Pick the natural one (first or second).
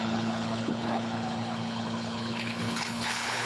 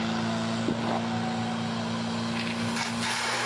second